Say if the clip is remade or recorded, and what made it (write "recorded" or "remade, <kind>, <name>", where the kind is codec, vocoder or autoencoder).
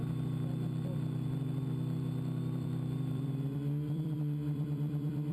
remade, vocoder, BigVGAN v2